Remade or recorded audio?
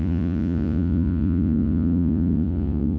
remade